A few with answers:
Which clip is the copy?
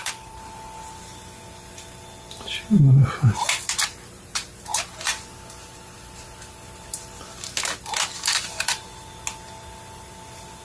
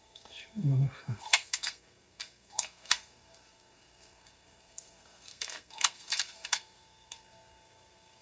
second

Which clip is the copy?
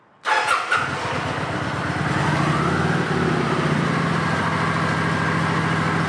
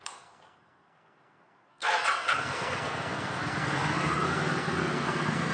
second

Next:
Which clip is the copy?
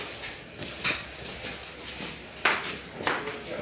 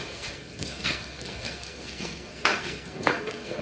second